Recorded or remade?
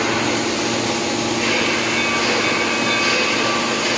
recorded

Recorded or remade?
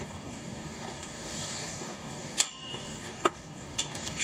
remade